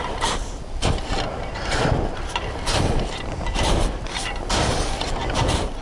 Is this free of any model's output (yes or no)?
no